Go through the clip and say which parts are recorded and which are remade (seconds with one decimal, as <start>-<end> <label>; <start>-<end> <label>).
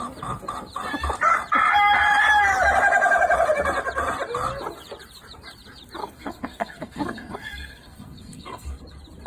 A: 0.0-6.0 recorded; 6.0-8.8 remade; 8.8-9.3 recorded